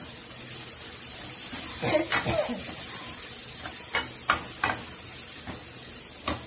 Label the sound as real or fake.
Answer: real